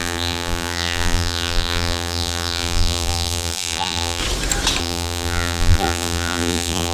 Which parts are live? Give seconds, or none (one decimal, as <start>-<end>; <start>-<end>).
4.2-4.8